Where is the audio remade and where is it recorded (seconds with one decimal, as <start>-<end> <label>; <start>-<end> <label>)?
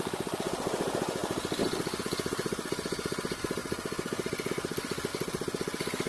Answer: 0.0-6.1 recorded